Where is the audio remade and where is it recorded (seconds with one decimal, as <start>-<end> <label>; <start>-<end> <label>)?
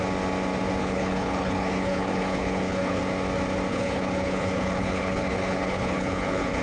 0.0-0.8 recorded; 0.8-3.0 remade; 3.0-3.7 recorded; 3.7-6.6 remade